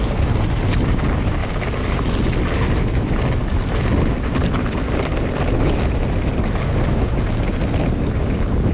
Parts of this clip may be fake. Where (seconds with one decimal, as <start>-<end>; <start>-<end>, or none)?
none